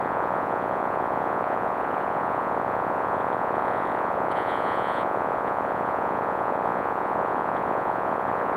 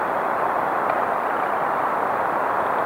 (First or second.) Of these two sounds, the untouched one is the second